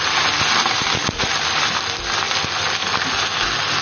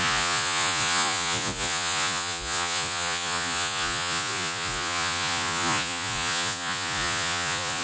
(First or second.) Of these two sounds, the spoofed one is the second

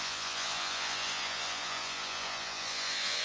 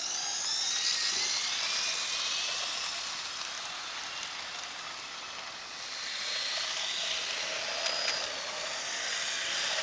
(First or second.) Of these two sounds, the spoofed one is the first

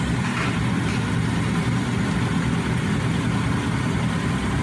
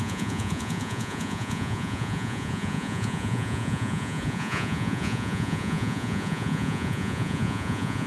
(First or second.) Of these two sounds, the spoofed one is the second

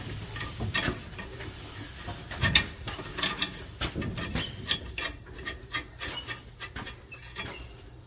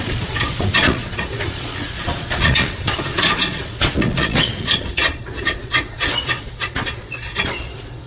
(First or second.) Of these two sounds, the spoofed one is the second